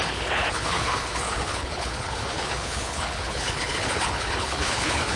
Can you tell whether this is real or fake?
fake